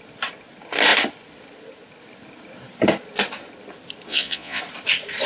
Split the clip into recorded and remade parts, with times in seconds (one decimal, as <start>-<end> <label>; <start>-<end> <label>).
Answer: 0.0-4.1 recorded; 4.1-4.6 remade; 4.6-5.3 recorded